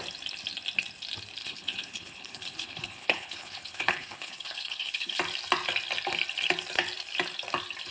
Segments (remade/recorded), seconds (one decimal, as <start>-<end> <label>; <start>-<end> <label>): 0.0-1.4 recorded; 1.4-5.2 remade; 5.2-7.9 recorded